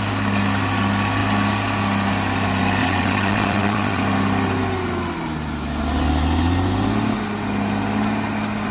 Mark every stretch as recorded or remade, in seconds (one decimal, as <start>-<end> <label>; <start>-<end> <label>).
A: 0.0-2.8 recorded; 2.8-4.0 remade; 4.0-8.7 recorded